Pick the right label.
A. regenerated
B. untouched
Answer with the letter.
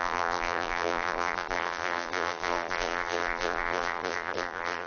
A